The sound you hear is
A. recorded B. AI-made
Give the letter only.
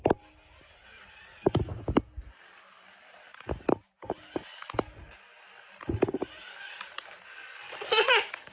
A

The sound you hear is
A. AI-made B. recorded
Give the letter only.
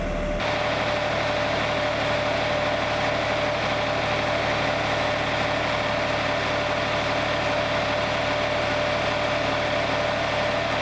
B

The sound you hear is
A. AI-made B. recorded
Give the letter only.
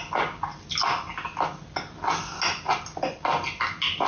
B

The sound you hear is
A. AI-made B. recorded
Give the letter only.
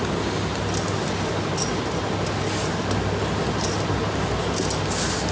B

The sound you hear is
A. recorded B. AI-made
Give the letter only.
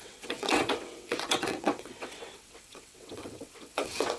B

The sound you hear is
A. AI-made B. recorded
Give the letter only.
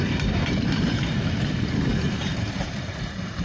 A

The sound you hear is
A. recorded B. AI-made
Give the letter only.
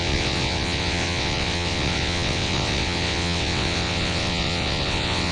B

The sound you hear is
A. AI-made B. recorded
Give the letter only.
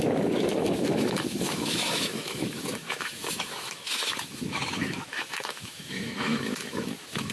A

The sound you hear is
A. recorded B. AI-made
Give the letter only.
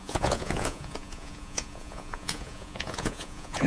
B